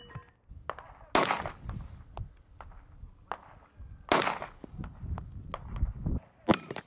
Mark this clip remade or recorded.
recorded